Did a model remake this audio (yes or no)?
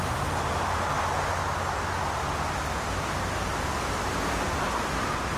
no